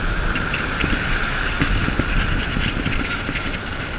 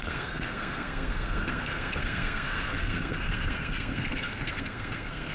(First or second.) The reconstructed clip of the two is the second